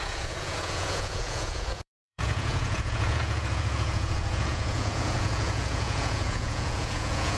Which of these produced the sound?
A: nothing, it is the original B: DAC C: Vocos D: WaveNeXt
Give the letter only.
C